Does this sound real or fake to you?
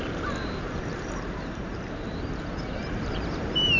fake